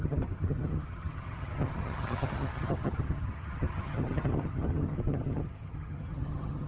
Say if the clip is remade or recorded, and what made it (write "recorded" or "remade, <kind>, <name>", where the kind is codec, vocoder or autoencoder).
remade, vocoder, HiFi-GAN